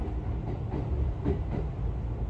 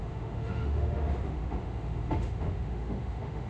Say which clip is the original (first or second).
first